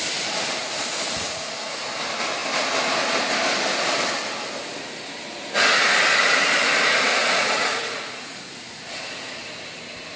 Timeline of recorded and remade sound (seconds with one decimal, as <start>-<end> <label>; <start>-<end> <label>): 0.0-0.6 recorded; 0.6-1.8 remade; 1.8-7.2 recorded; 7.2-9.5 remade; 9.5-10.2 recorded